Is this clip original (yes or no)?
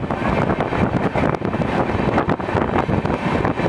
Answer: yes